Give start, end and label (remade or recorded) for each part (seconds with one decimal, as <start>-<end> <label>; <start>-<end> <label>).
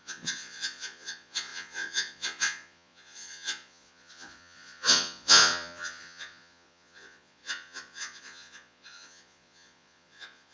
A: 0.0-10.5 remade